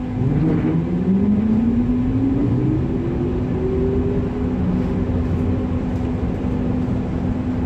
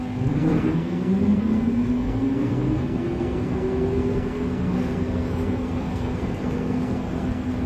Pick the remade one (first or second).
second